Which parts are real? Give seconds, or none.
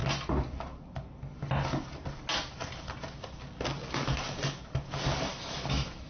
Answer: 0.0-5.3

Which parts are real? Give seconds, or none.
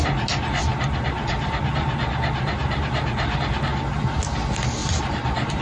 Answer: 0.0-4.8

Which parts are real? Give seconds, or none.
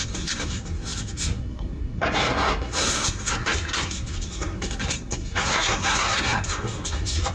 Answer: none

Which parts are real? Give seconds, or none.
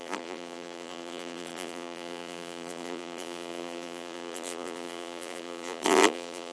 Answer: none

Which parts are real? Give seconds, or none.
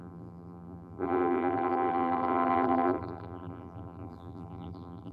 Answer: none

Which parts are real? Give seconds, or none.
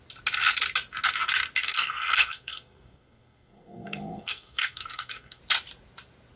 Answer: 0.0-1.6; 5.4-6.4